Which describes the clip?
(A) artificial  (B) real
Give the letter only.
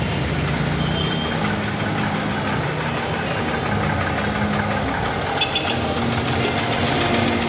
B